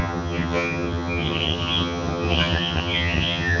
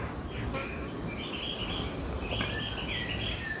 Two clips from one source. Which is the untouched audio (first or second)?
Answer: second